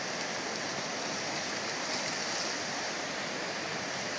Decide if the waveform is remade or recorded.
recorded